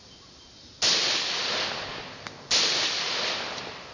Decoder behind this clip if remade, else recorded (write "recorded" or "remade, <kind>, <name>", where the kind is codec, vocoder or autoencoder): recorded